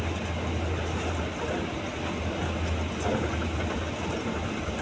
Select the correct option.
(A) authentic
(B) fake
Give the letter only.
A